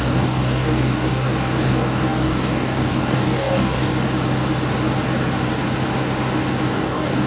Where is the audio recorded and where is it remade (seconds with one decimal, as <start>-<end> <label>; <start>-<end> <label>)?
0.0-3.9 remade; 3.9-6.7 recorded; 6.7-7.3 remade